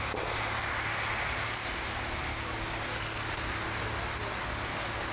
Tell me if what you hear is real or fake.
real